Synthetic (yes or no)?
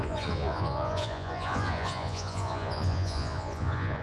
yes